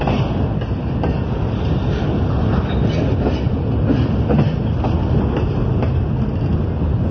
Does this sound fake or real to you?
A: real